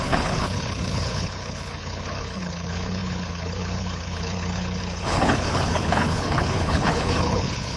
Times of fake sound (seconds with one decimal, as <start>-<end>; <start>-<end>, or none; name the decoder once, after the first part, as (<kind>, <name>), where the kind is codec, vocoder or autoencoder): 0.0-7.8 (codec, HILCodec)